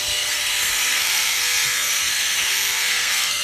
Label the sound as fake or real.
fake